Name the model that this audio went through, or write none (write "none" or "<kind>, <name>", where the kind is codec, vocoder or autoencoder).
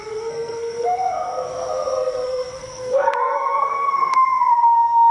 codec, SNAC